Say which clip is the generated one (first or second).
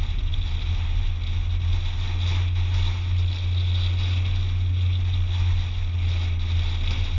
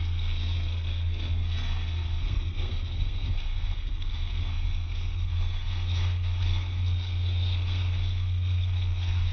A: second